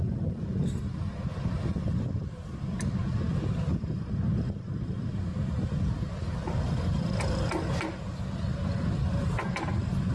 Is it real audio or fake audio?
real